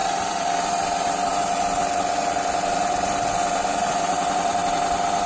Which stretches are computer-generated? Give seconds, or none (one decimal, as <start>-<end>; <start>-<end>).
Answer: 0.0-1.3; 3.5-4.5